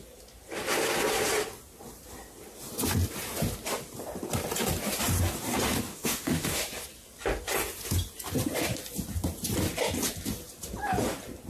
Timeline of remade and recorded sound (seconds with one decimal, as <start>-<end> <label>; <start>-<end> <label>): 0.0-5.9 recorded; 5.9-6.6 remade; 6.6-11.5 recorded